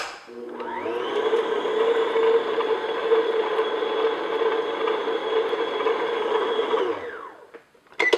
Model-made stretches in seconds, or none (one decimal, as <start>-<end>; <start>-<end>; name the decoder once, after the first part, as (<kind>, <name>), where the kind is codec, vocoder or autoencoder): 1.7-3.7 (vocoder, BigVGAN v2)